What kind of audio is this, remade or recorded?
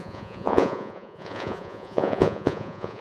remade